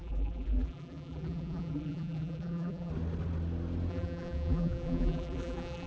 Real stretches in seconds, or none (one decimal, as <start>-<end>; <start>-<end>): 2.9-3.9